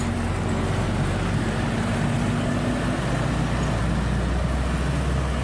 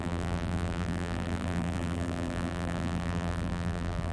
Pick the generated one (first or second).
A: second